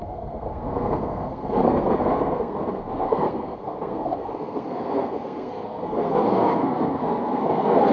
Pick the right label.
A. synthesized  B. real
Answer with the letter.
A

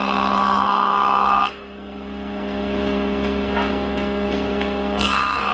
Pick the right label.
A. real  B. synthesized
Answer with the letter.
B